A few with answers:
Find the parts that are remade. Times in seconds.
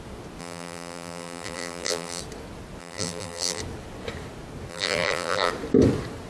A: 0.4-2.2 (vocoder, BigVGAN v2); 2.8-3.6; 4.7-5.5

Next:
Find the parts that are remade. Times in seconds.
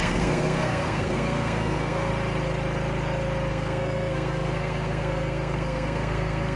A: 0.0-2.1 (codec, SNAC); 3.5-6.6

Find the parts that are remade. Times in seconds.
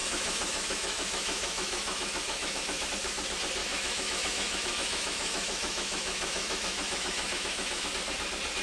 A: 0.0-2.9 (autoencoder, DAC-VAE); 3.6-7.9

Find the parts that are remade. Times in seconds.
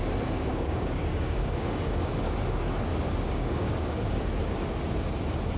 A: 0.5-2.4 (codec, DAC); 2.9-4.2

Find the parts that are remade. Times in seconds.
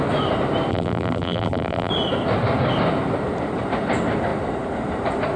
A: 0.7-1.9 (vocoder, BigVGAN v2)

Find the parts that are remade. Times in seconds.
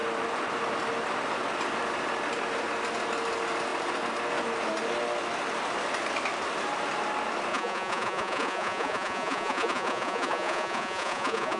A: 7.5-11.6 (vocoder, Vocos)